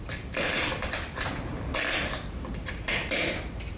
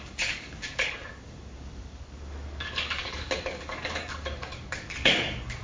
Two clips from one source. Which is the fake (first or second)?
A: second